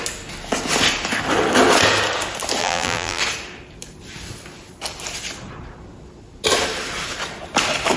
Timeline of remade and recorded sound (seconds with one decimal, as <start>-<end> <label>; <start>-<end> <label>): 0.0-2.6 recorded; 2.6-3.2 remade; 3.2-8.0 recorded